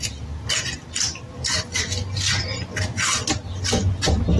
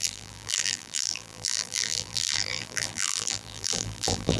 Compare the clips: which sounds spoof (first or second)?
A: second